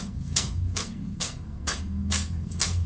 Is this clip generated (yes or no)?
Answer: yes